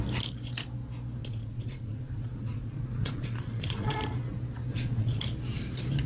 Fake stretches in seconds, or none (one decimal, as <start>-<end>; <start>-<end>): 1.2-4.0; 4.7-5.2